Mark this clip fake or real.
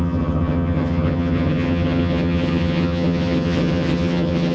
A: fake